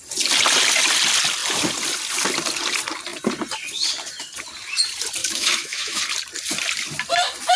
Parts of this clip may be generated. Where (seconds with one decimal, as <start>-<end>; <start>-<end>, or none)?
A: 5.2-6.0